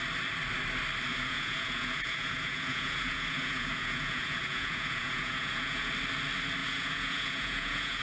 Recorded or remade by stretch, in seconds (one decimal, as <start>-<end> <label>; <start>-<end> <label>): 0.0-1.1 recorded; 1.1-5.9 remade; 5.9-6.6 recorded; 6.6-8.0 remade